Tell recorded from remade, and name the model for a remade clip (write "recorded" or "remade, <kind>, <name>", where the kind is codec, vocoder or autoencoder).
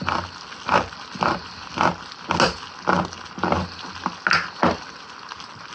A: recorded